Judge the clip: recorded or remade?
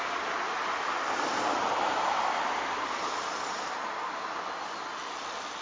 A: recorded